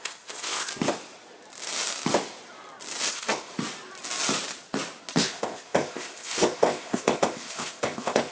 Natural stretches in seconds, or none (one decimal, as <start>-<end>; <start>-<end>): 0.7-3.1; 3.5-5.2